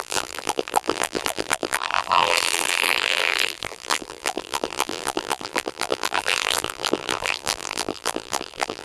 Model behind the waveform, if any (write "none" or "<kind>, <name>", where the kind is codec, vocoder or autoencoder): vocoder, BigVGAN v2